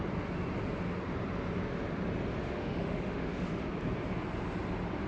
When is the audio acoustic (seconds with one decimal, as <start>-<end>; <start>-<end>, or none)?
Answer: 0.0-2.4; 3.7-5.1